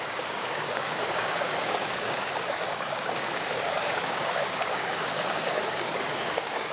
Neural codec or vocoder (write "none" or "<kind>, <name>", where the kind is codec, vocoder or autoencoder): codec, DAC